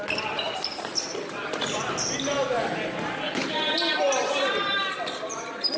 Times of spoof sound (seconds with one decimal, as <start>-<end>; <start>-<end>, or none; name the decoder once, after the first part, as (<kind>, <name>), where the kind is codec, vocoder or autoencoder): none